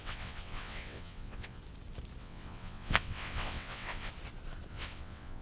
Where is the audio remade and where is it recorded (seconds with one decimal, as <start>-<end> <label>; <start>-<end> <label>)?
0.0-1.6 remade; 1.6-2.2 recorded; 2.2-4.1 remade; 4.1-4.7 recorded; 4.7-5.4 remade